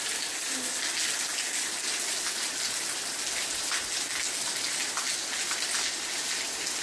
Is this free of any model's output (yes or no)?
yes